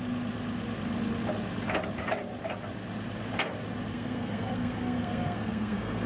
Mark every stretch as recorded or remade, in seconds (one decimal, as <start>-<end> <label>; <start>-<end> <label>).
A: 0.0-3.9 recorded; 3.9-6.1 remade

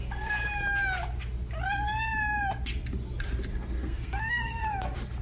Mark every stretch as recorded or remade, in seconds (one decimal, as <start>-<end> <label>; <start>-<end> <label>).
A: 0.0-0.4 remade; 0.4-3.5 recorded; 3.5-4.6 remade; 4.6-5.2 recorded

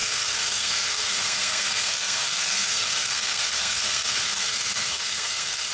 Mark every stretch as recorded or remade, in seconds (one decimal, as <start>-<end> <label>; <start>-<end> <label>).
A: 0.0-5.7 remade

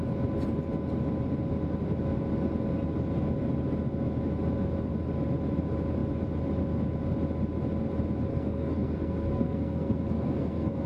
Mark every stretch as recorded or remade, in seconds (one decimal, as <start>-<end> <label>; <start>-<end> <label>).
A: 0.0-8.3 recorded; 8.3-10.9 remade

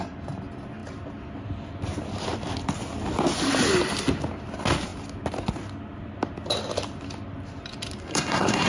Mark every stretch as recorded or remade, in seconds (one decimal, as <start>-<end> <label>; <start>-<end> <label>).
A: 0.0-8.1 recorded; 8.1-8.7 remade